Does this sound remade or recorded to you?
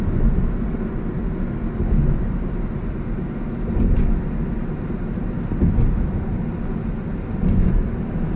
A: recorded